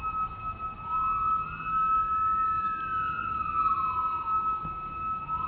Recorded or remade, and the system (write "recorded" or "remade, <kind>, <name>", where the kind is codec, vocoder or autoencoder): recorded